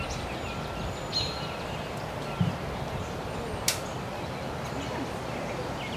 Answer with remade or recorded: recorded